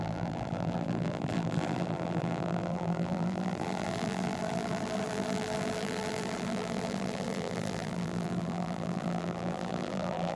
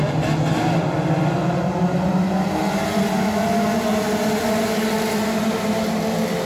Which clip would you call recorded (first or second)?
second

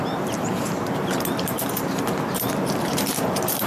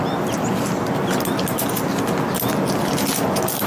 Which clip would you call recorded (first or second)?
second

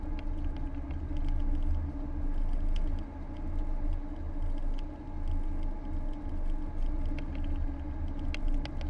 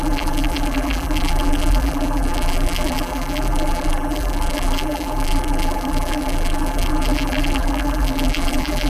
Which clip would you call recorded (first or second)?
first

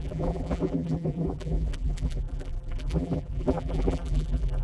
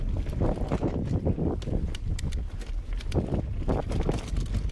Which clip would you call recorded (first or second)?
second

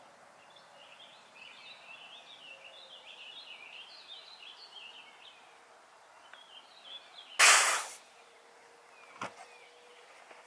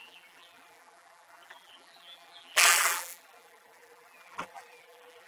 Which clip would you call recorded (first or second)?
first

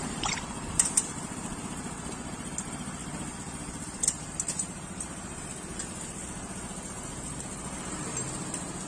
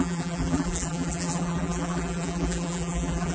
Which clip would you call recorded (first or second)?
first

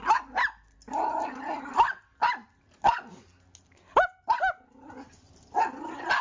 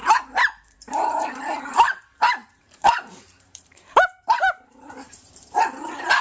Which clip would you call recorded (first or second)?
first